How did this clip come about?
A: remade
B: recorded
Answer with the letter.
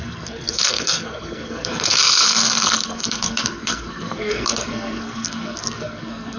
A